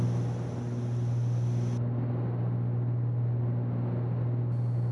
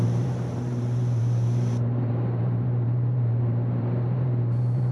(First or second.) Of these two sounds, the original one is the first